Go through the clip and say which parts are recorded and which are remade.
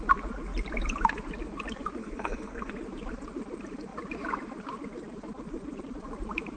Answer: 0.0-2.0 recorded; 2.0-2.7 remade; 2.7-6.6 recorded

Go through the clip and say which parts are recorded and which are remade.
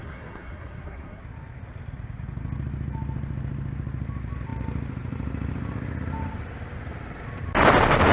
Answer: 0.0-1.2 remade; 1.2-8.1 recorded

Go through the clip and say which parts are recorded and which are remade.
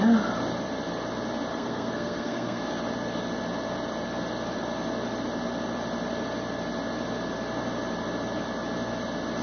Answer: 0.0-1.5 recorded; 1.5-2.6 remade; 2.6-9.4 recorded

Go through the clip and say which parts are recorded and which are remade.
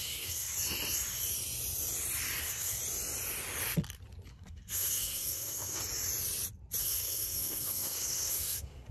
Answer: 0.0-0.5 remade; 0.5-2.4 recorded; 2.4-2.8 remade; 2.8-4.3 recorded; 4.3-5.8 remade; 5.8-6.8 recorded; 6.8-8.9 remade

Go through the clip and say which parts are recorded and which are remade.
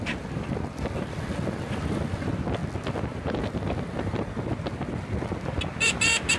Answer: 0.0-6.4 recorded